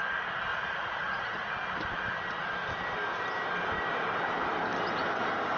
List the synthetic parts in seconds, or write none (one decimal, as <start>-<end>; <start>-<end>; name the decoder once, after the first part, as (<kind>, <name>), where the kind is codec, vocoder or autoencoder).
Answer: 0.5-1.5 (vocoder, Vocos)